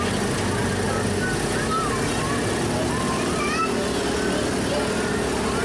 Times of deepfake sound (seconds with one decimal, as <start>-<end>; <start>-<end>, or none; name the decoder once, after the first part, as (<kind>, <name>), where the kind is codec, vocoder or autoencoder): none